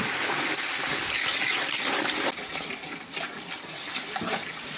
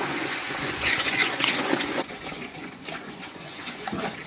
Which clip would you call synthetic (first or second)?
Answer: second